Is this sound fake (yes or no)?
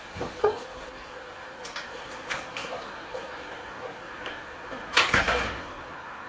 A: yes